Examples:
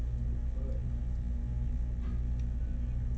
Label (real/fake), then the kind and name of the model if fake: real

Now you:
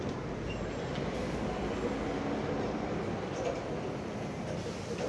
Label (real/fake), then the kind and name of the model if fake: real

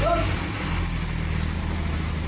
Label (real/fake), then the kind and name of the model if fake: real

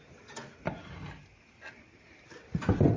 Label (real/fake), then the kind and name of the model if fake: real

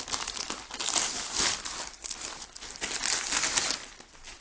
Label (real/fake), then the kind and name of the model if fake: real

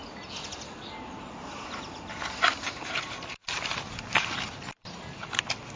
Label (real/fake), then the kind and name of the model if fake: real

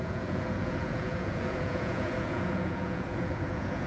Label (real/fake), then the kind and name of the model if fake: fake, vocoder, Vocos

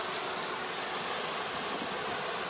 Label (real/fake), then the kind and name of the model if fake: real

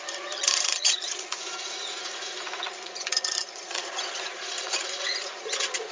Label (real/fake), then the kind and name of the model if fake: fake, vocoder, Vocos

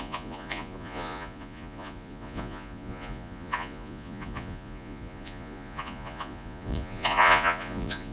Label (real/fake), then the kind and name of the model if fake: fake, vocoder, Vocos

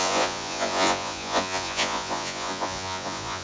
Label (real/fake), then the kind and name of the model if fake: fake, vocoder, Vocos